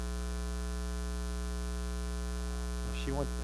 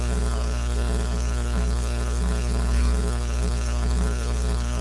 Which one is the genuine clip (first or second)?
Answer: first